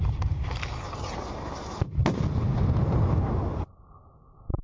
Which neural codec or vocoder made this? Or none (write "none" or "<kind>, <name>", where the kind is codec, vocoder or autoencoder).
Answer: none